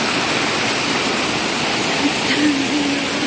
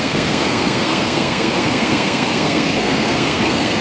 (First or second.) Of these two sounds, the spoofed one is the second